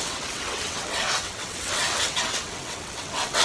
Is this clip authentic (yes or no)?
no